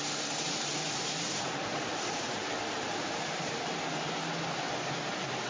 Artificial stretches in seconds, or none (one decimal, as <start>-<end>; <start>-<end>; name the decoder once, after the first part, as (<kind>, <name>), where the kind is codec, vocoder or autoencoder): 0.8-4.1 (vocoder, BigVGAN v2)